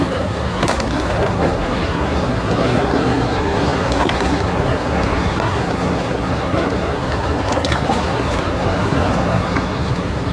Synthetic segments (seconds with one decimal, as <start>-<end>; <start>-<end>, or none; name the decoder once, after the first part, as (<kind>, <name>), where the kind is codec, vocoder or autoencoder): 0.0-10.3 (codec, SNAC)